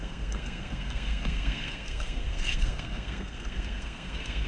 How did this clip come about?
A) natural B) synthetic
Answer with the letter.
B